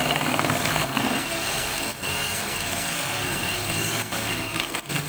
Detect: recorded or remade remade